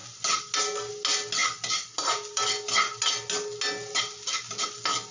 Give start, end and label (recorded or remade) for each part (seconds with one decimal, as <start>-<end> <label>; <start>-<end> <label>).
0.0-5.1 recorded